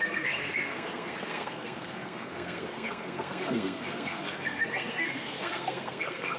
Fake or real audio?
fake